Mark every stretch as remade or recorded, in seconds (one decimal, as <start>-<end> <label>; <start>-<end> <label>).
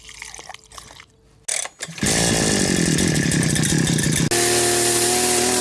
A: 0.0-5.6 recorded